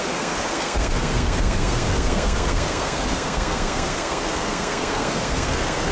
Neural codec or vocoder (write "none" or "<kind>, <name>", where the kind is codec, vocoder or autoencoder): codec, SNAC